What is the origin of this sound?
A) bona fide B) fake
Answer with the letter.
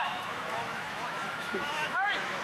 B